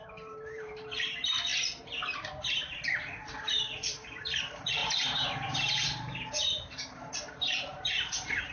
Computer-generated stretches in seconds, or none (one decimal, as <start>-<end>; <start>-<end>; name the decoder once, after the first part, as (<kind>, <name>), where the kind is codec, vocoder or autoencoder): 0.0-1.5 (vocoder, BigVGAN v2); 3.3-8.5